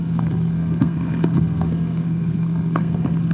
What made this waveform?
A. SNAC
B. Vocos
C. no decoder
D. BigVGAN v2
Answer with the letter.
A